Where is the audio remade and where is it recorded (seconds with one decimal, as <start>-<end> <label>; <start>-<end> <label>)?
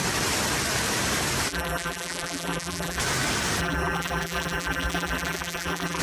0.0-1.5 recorded; 1.5-3.0 remade; 3.0-3.6 recorded; 3.6-6.0 remade